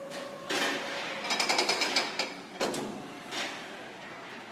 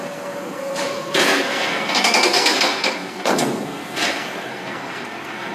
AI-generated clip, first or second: second